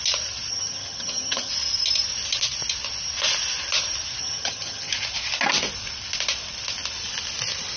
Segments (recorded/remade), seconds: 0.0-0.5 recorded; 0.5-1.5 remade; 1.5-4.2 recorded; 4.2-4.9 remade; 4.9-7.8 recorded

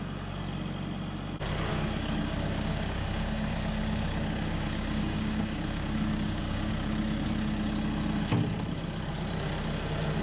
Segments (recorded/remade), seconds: 0.0-1.7 recorded; 1.7-6.7 remade; 6.7-10.2 recorded

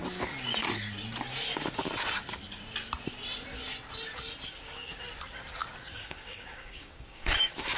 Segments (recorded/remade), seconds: 0.0-4.5 recorded; 4.5-4.9 remade; 4.9-5.9 recorded; 5.9-7.8 remade